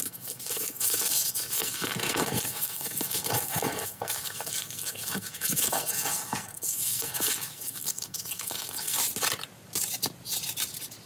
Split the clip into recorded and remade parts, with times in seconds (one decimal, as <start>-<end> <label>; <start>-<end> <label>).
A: 0.0-9.0 remade; 9.0-11.1 recorded